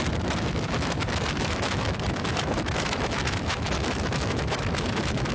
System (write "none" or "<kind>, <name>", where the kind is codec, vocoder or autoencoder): autoencoder, DAC-VAE